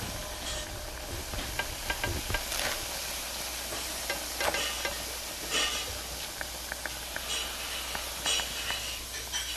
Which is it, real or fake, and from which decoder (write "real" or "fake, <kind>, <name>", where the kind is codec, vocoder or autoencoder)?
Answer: real